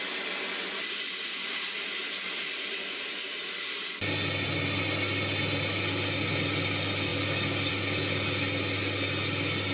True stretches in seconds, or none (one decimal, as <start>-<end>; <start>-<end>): 0.0-9.7